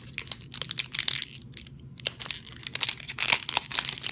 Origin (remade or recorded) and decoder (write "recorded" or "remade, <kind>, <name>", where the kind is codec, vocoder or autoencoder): recorded